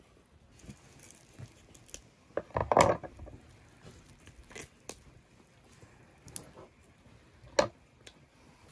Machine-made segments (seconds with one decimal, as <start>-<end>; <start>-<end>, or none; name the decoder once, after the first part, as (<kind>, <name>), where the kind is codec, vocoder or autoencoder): none